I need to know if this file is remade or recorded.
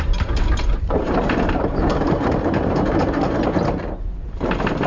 remade